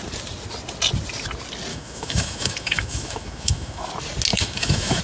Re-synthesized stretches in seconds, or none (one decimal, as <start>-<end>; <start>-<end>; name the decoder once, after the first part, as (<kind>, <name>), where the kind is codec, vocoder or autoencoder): 1.7-3.9 (autoencoder, DAC-VAE); 4.3-5.0